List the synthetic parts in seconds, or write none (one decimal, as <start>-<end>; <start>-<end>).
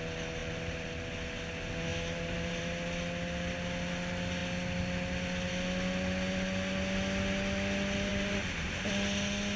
0.4-0.9; 1.9-2.6; 8.1-8.9